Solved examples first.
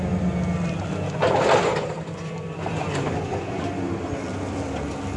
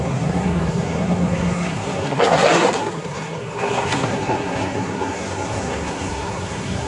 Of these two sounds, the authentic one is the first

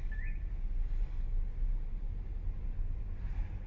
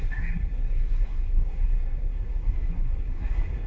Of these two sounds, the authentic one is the first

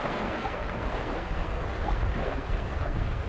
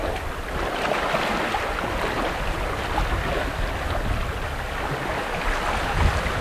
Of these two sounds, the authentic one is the second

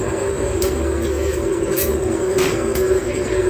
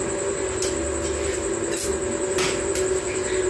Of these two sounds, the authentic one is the second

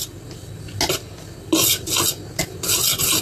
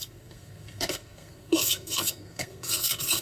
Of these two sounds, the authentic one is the first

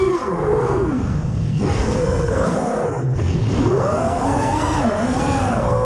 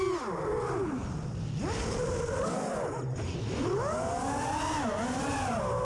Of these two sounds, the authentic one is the second